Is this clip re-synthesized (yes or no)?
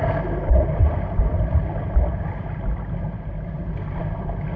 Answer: no